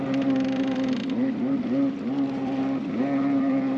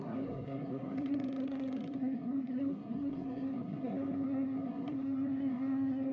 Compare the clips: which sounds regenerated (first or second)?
second